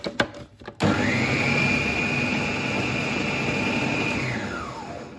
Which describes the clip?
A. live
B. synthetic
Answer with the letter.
A